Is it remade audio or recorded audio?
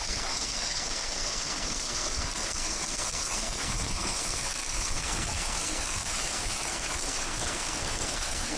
remade